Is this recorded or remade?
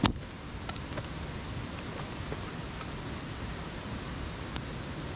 recorded